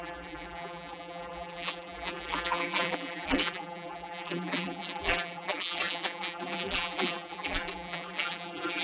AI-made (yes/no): yes